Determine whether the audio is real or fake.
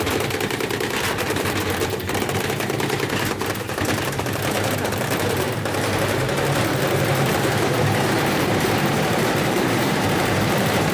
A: fake